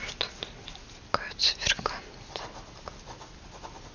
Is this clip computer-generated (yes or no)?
no